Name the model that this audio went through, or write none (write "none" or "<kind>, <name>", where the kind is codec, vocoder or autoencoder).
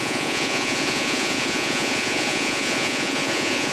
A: vocoder, Vocos